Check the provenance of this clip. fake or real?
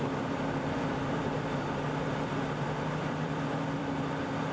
fake